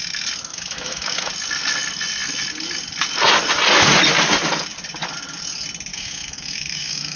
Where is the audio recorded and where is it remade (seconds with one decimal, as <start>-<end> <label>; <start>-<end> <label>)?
0.0-0.5 recorded; 0.5-1.3 remade; 1.3-5.9 recorded; 5.9-7.2 remade